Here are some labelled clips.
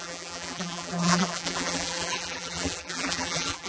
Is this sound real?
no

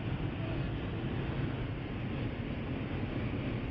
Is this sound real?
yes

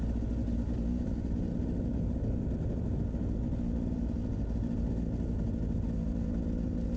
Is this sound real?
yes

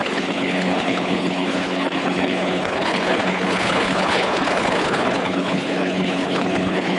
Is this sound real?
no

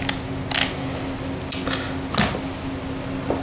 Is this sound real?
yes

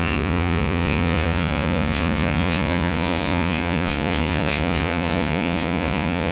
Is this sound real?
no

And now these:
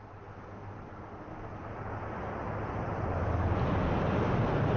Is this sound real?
yes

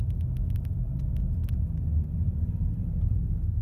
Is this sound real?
yes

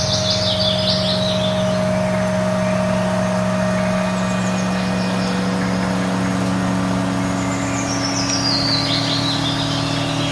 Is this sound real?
yes